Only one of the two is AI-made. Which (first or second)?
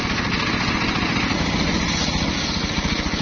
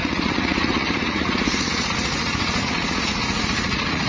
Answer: second